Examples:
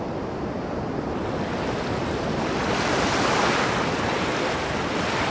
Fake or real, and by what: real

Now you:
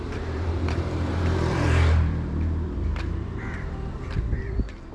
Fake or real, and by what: fake, vocoder, BigVGAN v2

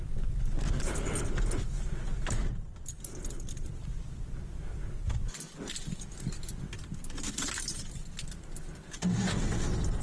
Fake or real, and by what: real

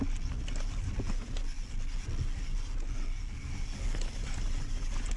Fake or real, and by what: real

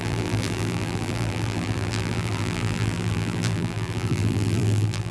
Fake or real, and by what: fake, vocoder, BigVGAN v2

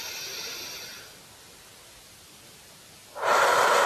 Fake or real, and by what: real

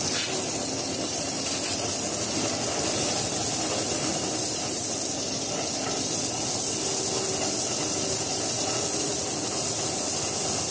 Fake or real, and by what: real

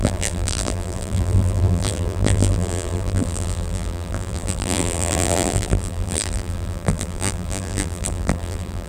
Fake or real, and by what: fake, vocoder, BigVGAN v2